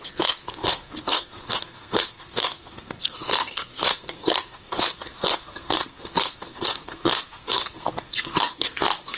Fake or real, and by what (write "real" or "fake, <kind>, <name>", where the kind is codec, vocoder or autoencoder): fake, codec, SNAC